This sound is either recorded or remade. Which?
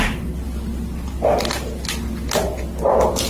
recorded